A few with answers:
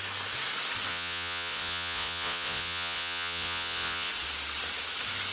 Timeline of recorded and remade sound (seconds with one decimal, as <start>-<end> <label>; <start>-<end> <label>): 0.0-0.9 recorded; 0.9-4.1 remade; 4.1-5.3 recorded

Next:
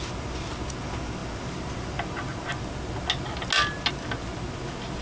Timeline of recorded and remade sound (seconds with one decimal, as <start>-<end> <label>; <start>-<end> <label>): 0.0-5.0 recorded

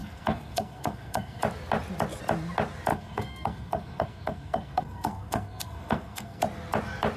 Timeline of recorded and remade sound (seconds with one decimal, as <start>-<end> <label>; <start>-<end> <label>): 0.0-1.4 remade; 1.4-2.9 recorded; 2.9-6.4 remade; 6.4-7.2 recorded